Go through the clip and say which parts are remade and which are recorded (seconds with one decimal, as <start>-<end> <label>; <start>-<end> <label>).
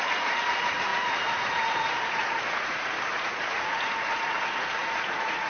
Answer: 0.0-5.5 remade